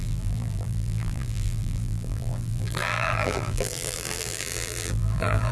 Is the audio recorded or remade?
remade